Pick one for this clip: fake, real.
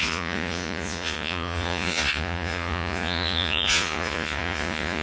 fake